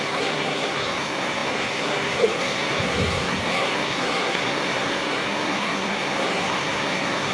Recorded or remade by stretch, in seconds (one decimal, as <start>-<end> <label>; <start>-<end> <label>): 0.0-7.3 remade